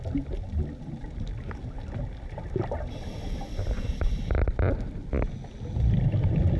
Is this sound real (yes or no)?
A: yes